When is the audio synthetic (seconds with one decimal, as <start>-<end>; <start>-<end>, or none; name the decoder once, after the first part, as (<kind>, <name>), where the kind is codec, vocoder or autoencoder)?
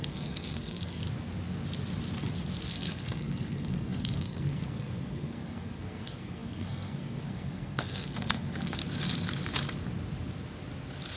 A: 0.0-1.0 (codec, SNAC); 2.7-8.8